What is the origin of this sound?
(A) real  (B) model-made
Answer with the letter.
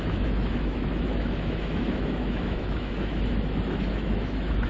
B